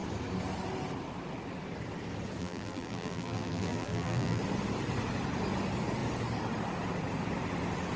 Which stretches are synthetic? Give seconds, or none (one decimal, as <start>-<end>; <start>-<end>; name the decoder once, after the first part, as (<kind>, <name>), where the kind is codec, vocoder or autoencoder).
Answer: 2.4-4.4 (vocoder, BigVGAN v2)